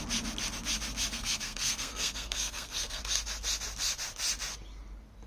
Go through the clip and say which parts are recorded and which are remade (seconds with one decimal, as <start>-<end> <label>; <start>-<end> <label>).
0.0-1.1 recorded; 1.1-3.0 remade; 3.0-5.3 recorded